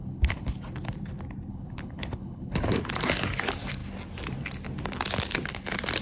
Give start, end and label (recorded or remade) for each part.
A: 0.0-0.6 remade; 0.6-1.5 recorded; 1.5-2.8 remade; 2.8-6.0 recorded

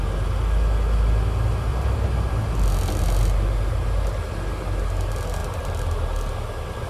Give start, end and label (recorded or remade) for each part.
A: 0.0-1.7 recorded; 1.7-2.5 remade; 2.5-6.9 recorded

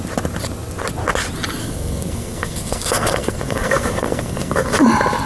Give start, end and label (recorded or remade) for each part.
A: 0.0-1.6 recorded; 1.6-4.8 remade; 4.8-5.3 recorded

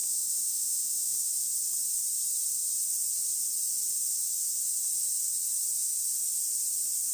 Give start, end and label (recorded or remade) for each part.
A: 0.0-1.3 remade; 1.3-7.1 recorded

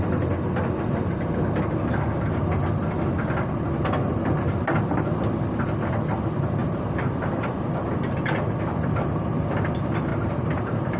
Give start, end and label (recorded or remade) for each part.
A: 0.0-6.6 recorded; 6.6-7.9 remade; 7.9-10.1 recorded; 10.1-11.0 remade

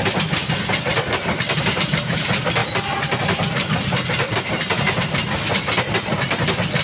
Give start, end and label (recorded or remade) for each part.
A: 0.0-0.9 recorded; 0.9-2.0 remade; 2.0-2.6 recorded; 2.6-4.6 remade; 4.6-6.8 recorded

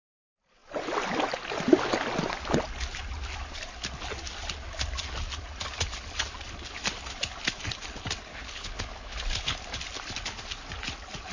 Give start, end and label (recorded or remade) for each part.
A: 0.0-8.3 recorded; 8.3-9.6 remade; 9.6-11.3 recorded

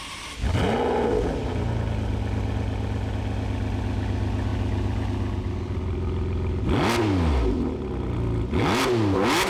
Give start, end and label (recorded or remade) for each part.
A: 0.0-9.5 recorded